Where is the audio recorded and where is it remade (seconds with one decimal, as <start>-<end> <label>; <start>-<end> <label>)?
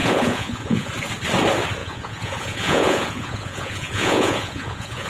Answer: 0.0-0.9 remade; 0.9-1.8 recorded; 1.8-5.1 remade